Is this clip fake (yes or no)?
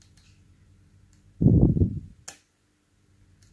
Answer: no